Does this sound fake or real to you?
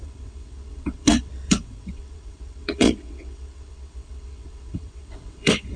fake